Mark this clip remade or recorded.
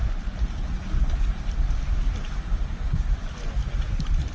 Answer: recorded